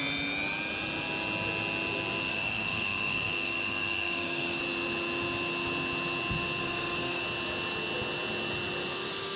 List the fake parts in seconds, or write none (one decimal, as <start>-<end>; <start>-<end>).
2.3-4.6; 6.6-7.2